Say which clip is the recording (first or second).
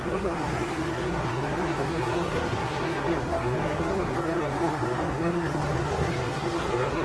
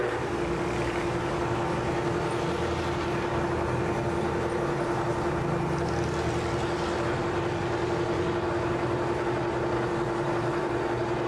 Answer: second